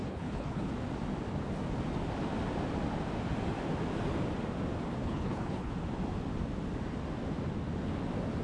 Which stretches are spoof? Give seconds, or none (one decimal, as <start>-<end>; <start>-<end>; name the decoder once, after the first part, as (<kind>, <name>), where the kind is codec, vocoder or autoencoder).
0.0-0.7 (codec, HILCodec); 5.0-5.7